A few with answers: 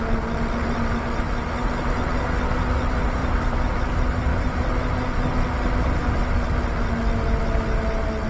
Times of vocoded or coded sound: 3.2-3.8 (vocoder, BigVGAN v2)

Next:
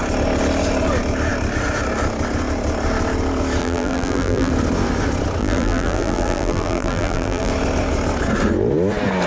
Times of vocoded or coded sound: 3.6-4.5 (vocoder, BigVGAN v2); 5.4-7.5

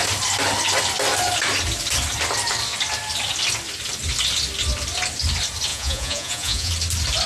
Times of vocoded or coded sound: 5.7-6.7 (vocoder, Vocos)